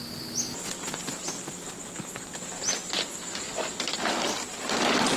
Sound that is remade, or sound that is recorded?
recorded